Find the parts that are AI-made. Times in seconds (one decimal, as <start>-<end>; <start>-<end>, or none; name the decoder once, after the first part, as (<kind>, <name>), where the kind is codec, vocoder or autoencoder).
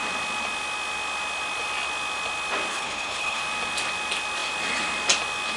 2.7-3.4 (codec, HILCodec)